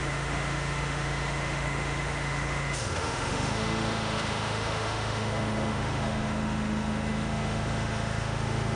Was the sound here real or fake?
fake